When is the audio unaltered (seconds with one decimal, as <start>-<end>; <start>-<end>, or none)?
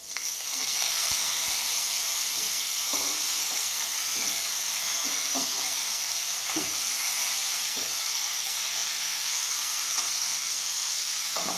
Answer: none